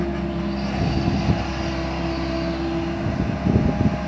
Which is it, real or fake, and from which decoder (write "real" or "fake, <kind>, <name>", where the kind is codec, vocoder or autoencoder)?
real